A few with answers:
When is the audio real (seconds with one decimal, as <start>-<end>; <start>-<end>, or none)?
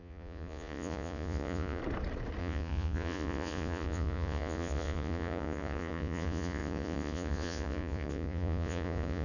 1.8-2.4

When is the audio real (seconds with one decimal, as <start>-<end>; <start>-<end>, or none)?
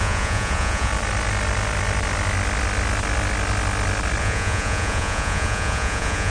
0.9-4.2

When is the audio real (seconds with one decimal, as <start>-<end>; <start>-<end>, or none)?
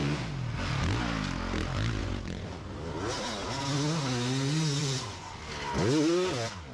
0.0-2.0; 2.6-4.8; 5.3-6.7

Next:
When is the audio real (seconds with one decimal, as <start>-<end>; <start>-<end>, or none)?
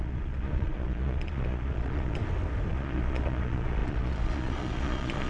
2.2-2.7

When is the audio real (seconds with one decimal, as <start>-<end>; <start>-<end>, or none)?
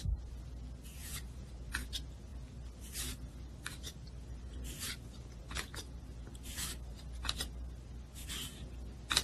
0.0-9.2